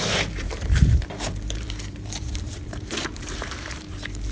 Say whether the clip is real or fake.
fake